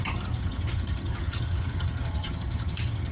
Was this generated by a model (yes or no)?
yes